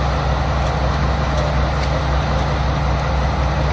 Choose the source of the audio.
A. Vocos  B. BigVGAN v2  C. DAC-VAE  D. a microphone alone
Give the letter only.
D